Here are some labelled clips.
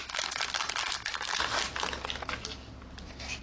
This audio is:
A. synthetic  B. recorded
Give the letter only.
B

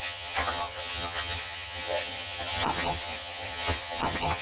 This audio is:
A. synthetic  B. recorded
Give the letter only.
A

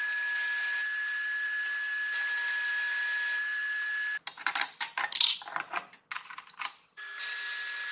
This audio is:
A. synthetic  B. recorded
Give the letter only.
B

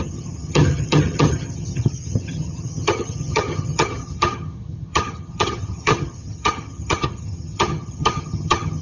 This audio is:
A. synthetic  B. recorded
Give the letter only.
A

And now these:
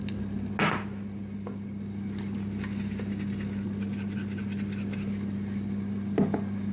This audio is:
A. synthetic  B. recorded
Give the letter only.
B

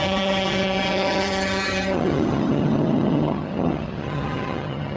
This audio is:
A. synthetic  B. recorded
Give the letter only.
A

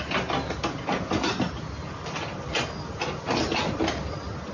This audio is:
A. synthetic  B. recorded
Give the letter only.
B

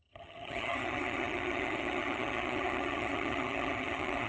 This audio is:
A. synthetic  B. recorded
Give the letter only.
A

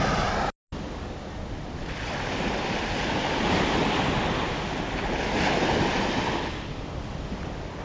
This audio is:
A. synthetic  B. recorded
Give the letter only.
B